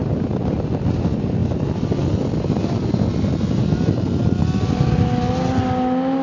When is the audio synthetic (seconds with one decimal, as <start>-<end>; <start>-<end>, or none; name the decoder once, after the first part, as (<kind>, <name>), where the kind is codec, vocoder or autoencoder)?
none